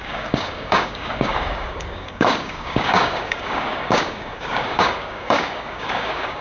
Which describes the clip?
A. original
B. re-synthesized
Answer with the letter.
B